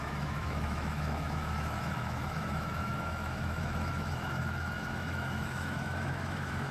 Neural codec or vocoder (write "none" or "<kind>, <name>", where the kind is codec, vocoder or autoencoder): autoencoder, DAC-VAE